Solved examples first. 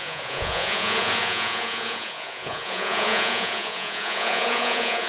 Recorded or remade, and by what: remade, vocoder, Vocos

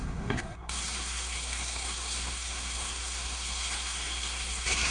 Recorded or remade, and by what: remade, codec, SNAC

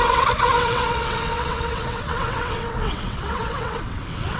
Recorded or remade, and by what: remade, vocoder, WaveNeXt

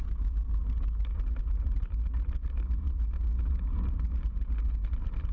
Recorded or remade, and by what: recorded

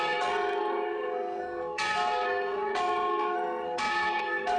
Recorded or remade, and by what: remade, codec, SNAC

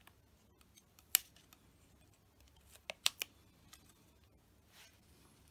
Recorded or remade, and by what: recorded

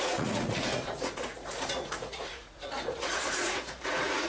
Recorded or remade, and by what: remade, vocoder, Vocos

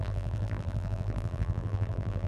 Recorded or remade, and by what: remade, vocoder, BigVGAN v2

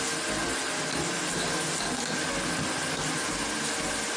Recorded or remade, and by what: recorded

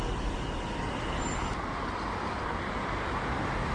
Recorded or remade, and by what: recorded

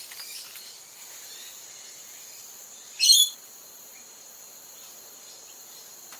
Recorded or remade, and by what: remade, vocoder, BigVGAN v2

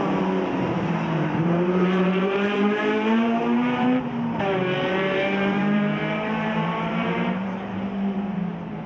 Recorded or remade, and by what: remade, vocoder, BigVGAN v2